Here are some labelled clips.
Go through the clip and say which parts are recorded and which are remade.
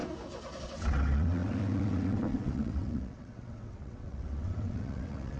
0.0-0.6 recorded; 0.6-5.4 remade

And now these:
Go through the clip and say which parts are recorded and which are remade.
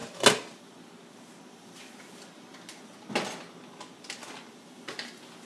0.0-5.5 recorded